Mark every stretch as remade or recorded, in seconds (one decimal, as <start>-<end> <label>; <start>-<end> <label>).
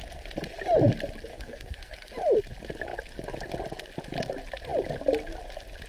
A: 0.0-1.3 recorded; 1.3-2.1 remade; 2.1-5.9 recorded